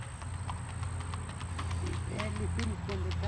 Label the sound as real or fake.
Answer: real